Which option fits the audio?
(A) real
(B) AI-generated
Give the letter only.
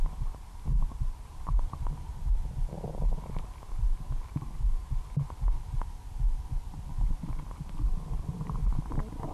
A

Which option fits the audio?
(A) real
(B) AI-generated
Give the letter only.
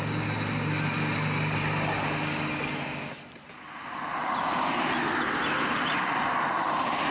A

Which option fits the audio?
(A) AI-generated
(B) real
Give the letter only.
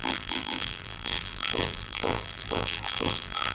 A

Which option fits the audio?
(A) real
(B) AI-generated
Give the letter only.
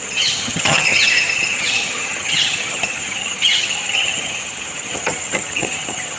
B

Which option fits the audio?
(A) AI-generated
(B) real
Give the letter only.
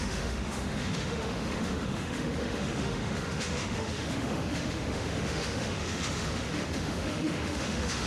A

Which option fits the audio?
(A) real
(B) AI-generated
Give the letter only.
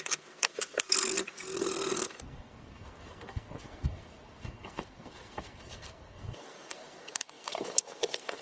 B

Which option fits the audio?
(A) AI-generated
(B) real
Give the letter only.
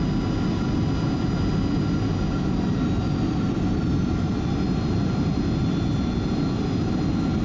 B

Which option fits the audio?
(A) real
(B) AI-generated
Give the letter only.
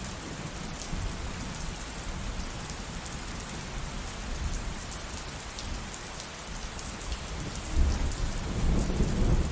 A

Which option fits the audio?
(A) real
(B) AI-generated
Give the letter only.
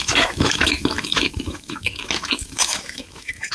B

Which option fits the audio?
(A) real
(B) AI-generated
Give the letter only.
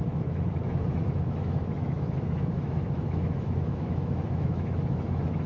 B